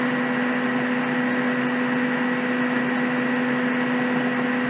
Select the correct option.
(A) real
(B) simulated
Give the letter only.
A